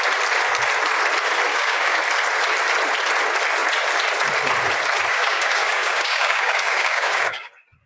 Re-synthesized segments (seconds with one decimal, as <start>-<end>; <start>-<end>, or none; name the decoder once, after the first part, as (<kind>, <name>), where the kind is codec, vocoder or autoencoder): 1.5-2.0 (codec, DAC); 5.1-7.5